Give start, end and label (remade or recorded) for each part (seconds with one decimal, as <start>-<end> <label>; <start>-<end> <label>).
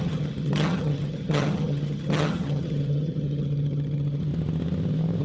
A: 0.0-4.3 remade; 4.3-5.2 recorded